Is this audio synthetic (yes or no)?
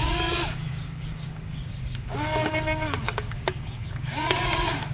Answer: yes